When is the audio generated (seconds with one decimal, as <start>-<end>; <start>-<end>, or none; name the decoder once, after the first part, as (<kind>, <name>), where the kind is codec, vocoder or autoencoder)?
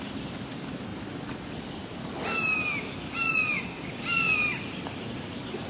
none